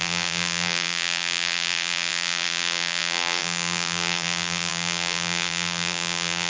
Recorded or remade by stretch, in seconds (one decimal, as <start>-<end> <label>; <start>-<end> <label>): 0.0-6.5 remade